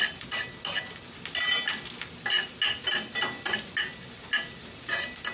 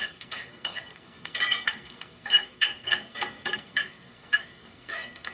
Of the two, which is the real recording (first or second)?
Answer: first